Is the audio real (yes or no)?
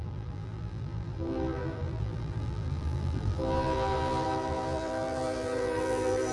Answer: no